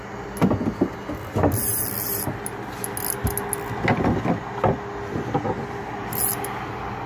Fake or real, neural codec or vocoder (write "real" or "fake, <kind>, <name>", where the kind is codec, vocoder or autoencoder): real